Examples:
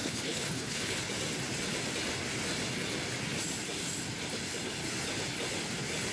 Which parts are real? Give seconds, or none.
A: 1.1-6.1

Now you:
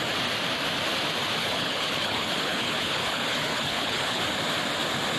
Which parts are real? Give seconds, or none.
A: 0.0-1.4; 4.2-5.2